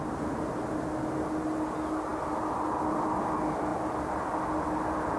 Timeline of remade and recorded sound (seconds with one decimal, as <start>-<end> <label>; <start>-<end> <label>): 0.0-3.7 recorded; 3.7-4.3 remade; 4.3-5.2 recorded